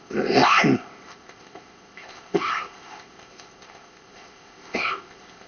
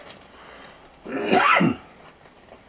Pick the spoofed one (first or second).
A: first